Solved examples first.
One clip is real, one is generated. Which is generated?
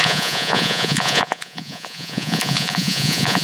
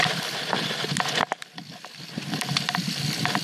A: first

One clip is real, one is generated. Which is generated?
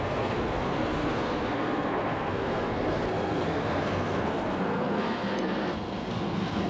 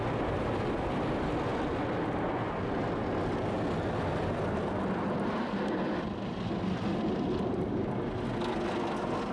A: first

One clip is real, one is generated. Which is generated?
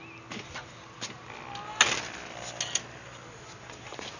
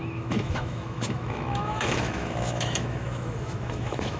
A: second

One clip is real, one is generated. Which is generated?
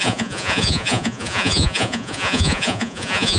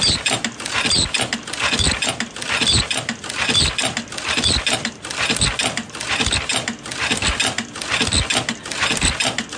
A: first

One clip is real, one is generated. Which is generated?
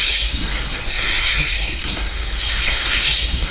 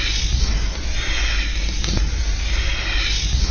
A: first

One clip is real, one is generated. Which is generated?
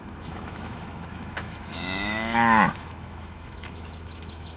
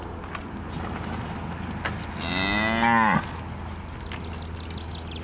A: first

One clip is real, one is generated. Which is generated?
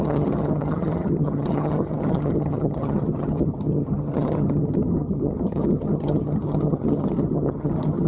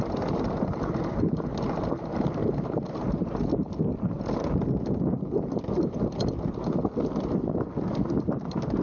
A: first